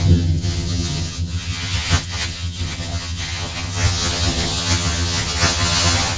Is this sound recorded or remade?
remade